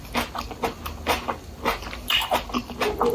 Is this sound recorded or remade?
recorded